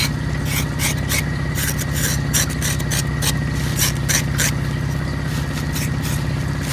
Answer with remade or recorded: recorded